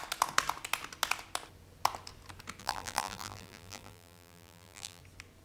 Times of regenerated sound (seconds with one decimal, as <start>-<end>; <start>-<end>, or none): 2.6-5.0